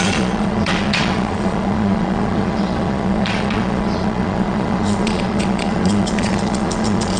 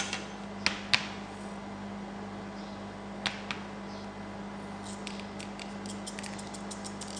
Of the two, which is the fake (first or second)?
first